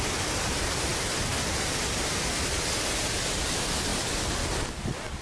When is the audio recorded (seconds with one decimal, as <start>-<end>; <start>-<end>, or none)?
0.0-5.2